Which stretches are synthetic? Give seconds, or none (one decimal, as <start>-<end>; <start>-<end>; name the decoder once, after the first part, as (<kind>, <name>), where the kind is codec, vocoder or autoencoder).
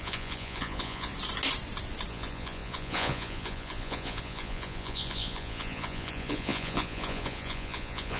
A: 0.0-1.1 (vocoder, Vocos); 2.1-8.2